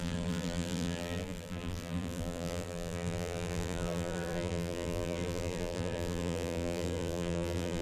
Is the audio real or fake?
fake